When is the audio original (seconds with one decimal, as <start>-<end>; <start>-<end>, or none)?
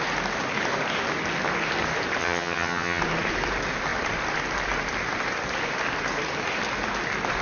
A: 0.0-2.2; 3.0-7.4